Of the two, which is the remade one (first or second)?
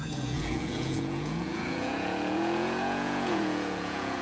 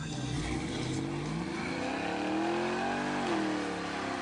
first